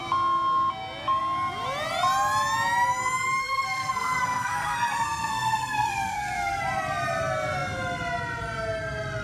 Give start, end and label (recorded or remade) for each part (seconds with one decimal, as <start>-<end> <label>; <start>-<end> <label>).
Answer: 0.0-3.4 recorded; 3.4-6.6 remade; 6.6-9.2 recorded